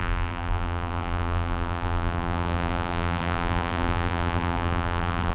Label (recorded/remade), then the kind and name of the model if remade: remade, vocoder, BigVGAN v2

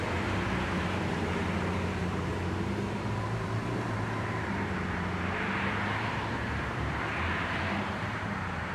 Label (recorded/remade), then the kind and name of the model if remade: remade, vocoder, BigVGAN v2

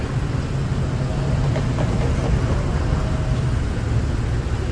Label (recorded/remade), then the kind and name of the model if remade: recorded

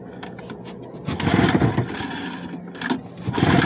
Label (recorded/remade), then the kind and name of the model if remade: recorded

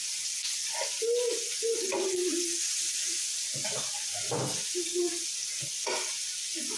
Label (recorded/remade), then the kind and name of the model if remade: recorded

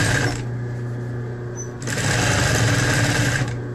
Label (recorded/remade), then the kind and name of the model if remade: recorded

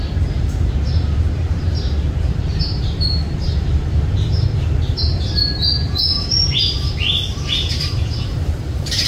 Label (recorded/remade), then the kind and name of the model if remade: remade, vocoder, BigVGAN v2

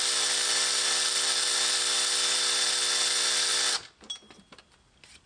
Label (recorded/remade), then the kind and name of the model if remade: remade, vocoder, BigVGAN v2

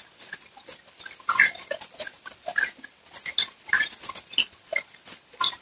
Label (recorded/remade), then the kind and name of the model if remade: recorded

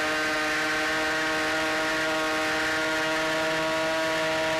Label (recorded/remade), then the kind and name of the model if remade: recorded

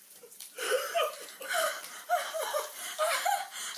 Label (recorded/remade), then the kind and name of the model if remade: remade, vocoder, BigVGAN v2